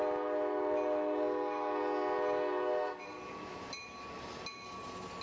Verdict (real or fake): real